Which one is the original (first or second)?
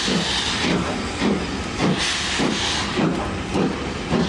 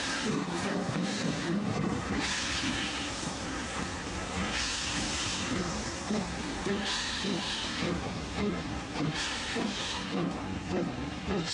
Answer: first